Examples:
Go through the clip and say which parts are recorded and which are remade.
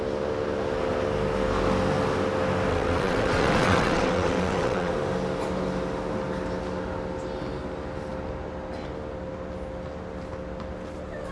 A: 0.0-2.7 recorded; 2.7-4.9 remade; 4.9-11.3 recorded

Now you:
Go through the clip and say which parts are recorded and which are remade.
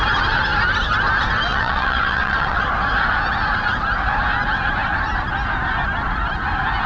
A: 0.0-1.5 recorded; 1.5-2.6 remade; 2.6-6.9 recorded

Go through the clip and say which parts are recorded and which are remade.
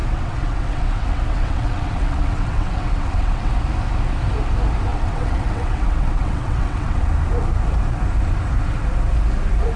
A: 0.0-3.5 remade; 3.5-4.9 recorded; 4.9-7.1 remade; 7.1-9.8 recorded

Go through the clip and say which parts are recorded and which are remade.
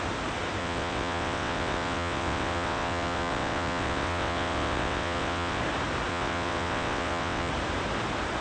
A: 0.0-0.6 recorded; 0.6-5.6 remade; 5.6-6.1 recorded; 6.1-7.5 remade; 7.5-8.4 recorded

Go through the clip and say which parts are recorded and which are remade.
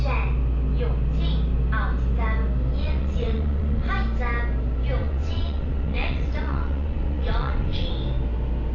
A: 0.0-2.8 recorded; 2.8-3.9 remade; 3.9-5.0 recorded; 5.0-7.9 remade; 7.9-8.7 recorded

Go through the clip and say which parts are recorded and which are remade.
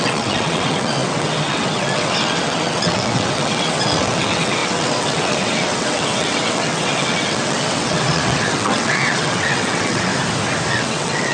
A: 0.0-10.1 remade; 10.1-10.7 recorded; 10.7-11.3 remade